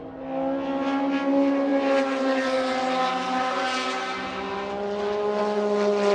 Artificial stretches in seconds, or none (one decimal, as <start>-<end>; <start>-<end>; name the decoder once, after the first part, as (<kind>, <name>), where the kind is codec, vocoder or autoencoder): none